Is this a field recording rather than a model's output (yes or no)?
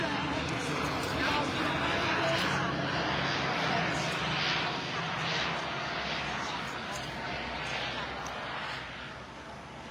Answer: yes